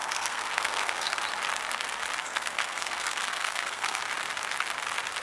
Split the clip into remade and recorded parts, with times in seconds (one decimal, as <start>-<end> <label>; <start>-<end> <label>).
0.0-1.2 remade; 1.2-2.2 recorded; 2.2-4.0 remade; 4.0-5.2 recorded